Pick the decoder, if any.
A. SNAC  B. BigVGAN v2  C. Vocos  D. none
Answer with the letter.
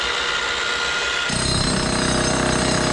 D